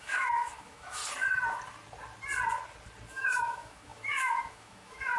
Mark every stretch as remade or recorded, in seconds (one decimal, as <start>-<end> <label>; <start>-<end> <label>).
0.0-1.0 remade; 1.0-3.1 recorded; 3.1-5.2 remade